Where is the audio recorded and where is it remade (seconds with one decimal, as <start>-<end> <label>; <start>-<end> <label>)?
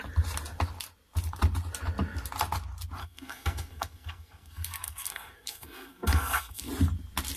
0.0-3.0 recorded; 3.0-6.7 remade; 6.7-7.4 recorded